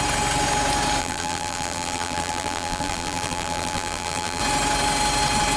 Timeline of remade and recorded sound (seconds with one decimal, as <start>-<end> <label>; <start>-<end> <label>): 0.0-1.0 recorded; 1.0-4.4 remade; 4.4-5.6 recorded